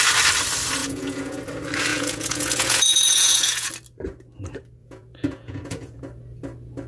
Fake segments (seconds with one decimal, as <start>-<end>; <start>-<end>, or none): 0.8-1.4; 1.9-3.7; 4.8-6.0